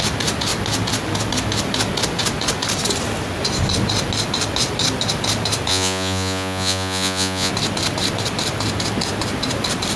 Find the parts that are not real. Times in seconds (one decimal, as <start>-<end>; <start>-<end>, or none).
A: 5.7-7.5

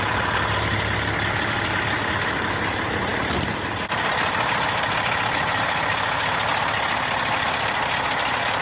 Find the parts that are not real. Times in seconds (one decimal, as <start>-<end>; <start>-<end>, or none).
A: none

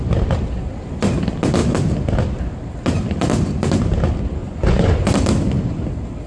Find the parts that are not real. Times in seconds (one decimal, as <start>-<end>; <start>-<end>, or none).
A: 3.3-3.8; 4.4-5.0

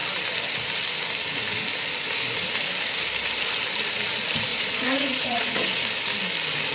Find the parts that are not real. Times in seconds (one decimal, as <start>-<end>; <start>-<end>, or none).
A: 4.5-5.8

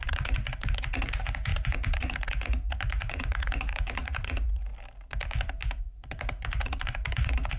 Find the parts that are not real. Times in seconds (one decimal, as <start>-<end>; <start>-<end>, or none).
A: 0.0-4.7; 5.8-7.6